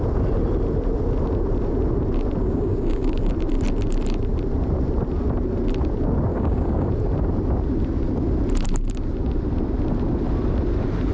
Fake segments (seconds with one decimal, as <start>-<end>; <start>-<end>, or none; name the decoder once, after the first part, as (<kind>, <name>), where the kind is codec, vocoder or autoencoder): 2.4-3.3 (codec, DAC); 6.3-6.9